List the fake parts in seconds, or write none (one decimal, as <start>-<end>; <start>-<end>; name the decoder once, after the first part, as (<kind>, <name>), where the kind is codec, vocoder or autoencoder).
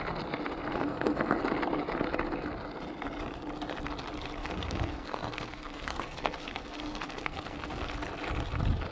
0.7-1.4 (codec, SNAC); 4.4-7.9